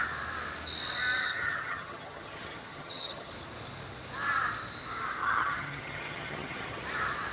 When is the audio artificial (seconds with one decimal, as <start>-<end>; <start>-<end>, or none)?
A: 1.2-3.3; 5.2-6.8